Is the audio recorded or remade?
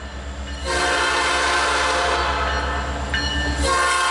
recorded